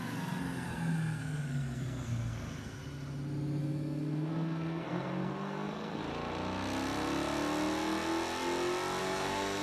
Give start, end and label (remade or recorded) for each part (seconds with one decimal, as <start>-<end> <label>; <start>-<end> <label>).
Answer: 0.0-2.8 remade; 2.8-3.6 recorded; 3.6-6.0 remade; 6.0-9.0 recorded; 9.0-9.6 remade